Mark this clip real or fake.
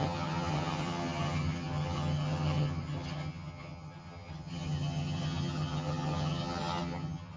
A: fake